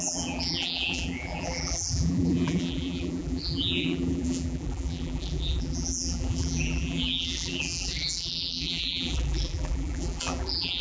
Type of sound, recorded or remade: remade